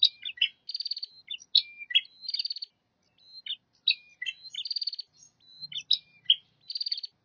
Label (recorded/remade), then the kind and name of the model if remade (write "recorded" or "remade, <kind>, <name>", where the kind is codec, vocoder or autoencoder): recorded